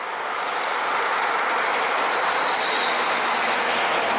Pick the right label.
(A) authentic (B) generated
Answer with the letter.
A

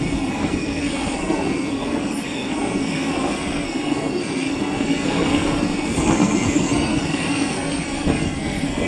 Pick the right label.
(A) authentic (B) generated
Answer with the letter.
B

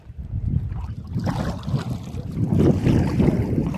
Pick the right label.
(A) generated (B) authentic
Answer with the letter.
B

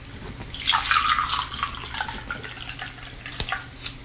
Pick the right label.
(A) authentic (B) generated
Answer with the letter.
A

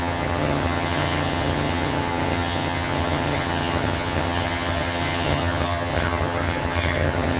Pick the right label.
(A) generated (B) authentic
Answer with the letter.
A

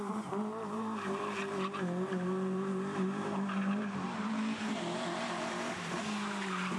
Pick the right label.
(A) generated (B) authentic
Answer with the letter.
A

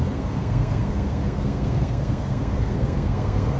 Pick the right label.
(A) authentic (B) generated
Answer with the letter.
B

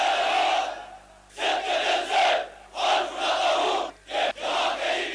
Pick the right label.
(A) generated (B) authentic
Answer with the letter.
B